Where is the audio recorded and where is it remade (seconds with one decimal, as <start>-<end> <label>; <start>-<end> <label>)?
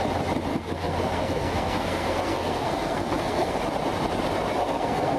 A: 0.0-0.5 recorded; 0.5-3.6 remade; 3.6-4.6 recorded; 4.6-5.2 remade